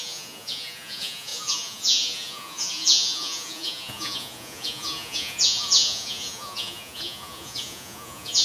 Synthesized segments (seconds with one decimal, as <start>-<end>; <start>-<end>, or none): 0.0-8.4